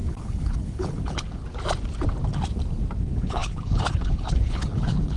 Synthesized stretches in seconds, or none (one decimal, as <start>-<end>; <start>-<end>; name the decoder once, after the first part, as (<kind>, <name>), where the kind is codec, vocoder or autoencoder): 0.0-1.4 (codec, HILCodec); 3.0-5.2